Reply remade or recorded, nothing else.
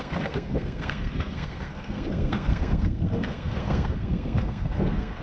remade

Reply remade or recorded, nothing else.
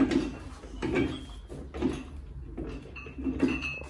recorded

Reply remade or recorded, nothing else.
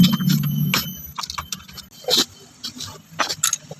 recorded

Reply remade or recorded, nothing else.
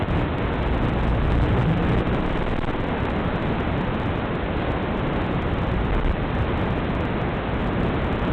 recorded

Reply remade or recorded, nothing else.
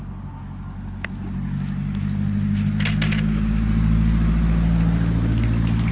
recorded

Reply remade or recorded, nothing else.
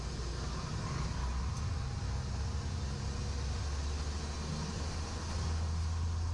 recorded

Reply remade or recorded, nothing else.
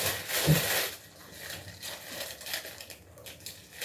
recorded